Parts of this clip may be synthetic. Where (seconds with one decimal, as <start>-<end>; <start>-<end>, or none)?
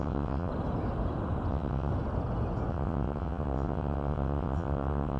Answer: 0.0-0.5; 1.5-1.9; 2.7-5.2